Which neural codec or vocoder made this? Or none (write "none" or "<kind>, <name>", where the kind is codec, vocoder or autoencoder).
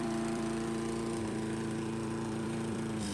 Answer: vocoder, BigVGAN v2